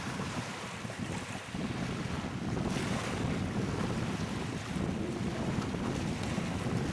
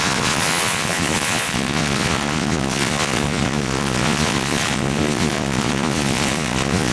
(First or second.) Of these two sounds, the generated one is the second